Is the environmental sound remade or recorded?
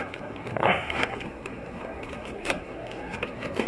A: remade